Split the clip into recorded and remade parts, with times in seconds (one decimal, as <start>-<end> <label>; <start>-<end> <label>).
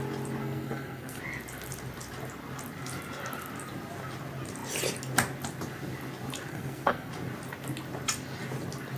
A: 0.0-0.4 recorded; 0.4-1.2 remade; 1.2-6.5 recorded; 6.5-7.1 remade; 7.1-9.0 recorded